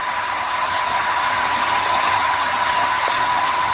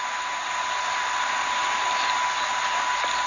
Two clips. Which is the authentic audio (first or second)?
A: second